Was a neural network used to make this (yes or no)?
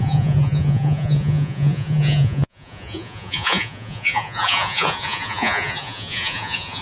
yes